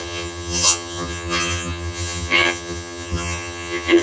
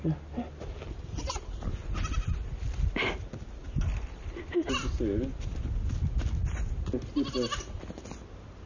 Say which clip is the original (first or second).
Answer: second